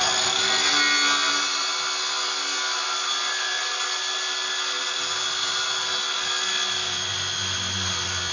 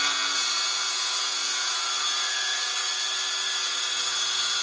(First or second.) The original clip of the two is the first